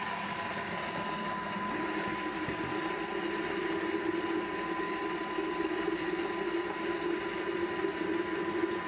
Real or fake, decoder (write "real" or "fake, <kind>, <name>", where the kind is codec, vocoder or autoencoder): real